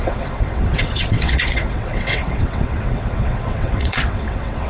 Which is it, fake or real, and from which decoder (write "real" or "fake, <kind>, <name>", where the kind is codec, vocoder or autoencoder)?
fake, vocoder, WaveNeXt